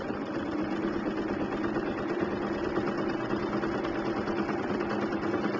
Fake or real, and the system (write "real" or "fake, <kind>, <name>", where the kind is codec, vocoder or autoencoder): real